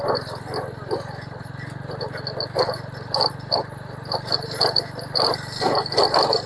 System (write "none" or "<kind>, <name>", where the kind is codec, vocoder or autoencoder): none